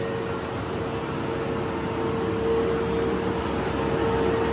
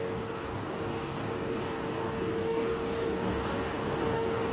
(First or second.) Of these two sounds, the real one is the first